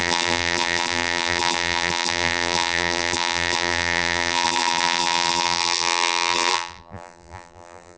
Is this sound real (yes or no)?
no